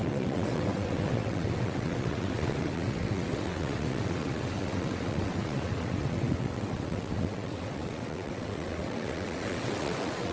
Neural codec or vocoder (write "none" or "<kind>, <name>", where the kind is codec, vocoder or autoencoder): vocoder, WaveNeXt